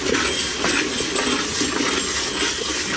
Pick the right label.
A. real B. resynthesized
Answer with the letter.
A